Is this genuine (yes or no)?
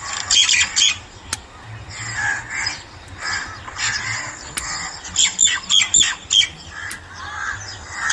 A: yes